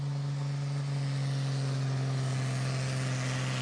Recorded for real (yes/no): yes